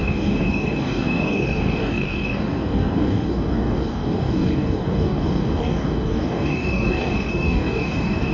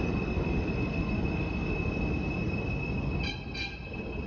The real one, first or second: second